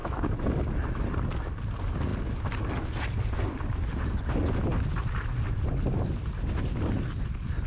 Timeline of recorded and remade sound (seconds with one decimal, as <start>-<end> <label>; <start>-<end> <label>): 0.0-0.5 remade; 0.5-7.7 recorded